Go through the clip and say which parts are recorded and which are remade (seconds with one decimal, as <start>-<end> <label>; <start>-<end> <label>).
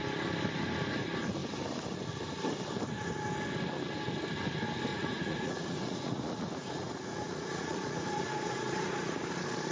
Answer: 0.0-4.9 recorded; 4.9-9.2 remade; 9.2-9.7 recorded